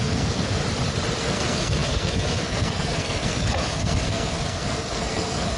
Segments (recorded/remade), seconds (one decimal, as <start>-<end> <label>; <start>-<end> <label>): 0.0-0.6 remade; 0.6-1.2 recorded; 1.2-5.6 remade